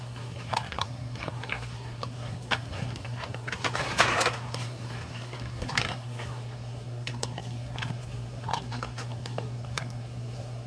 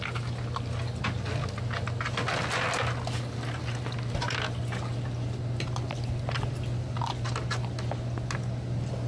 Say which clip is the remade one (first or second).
first